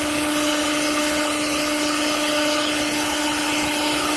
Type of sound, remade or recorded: remade